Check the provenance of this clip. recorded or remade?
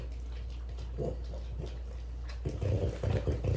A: recorded